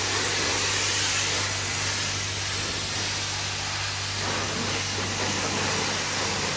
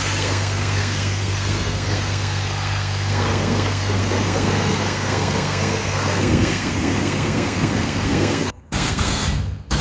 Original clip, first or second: first